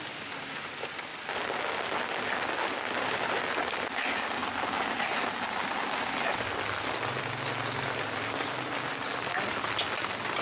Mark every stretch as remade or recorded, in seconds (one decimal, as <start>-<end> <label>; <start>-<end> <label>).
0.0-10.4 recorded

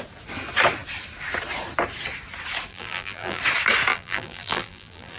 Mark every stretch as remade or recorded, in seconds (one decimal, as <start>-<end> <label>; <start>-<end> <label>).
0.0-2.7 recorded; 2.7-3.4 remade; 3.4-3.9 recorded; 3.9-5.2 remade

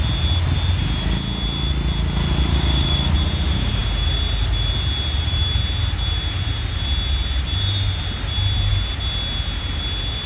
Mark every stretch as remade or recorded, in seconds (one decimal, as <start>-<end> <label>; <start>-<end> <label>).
0.0-2.5 recorded; 2.5-3.1 remade; 3.1-10.3 recorded

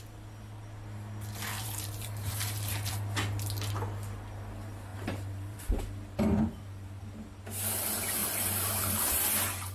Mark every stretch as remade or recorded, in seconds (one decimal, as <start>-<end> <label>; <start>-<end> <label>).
0.0-1.5 recorded; 1.5-2.9 remade; 2.9-4.9 recorded; 4.9-5.8 remade; 5.8-8.2 recorded; 8.2-9.0 remade; 9.0-9.7 recorded